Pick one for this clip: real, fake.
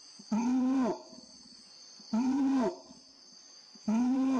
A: fake